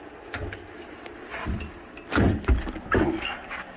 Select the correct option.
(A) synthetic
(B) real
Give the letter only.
B